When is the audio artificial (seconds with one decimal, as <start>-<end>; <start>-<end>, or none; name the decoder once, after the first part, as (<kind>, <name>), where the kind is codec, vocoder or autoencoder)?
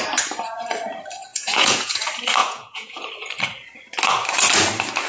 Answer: 1.3-2.0 (vocoder, Vocos); 2.4-3.0